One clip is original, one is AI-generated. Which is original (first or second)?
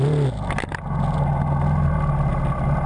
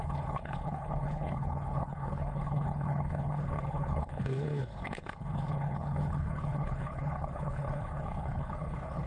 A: first